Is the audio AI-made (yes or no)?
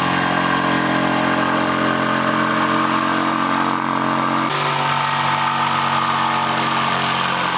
no